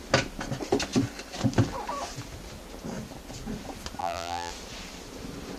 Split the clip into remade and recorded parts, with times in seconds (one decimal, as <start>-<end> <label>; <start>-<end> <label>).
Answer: 0.0-4.0 recorded; 4.0-4.5 remade; 4.5-5.6 recorded